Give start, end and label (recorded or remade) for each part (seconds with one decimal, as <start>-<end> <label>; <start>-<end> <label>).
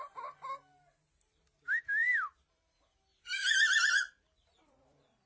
0.0-2.0 recorded; 2.0-5.3 remade